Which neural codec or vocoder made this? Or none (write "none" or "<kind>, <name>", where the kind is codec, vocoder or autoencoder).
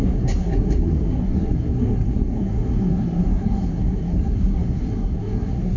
codec, SNAC